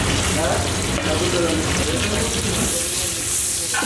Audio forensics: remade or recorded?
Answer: recorded